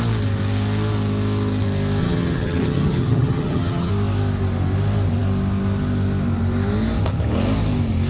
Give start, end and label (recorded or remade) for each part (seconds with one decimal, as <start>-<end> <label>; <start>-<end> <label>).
0.0-2.0 recorded; 2.0-3.9 remade; 3.9-8.1 recorded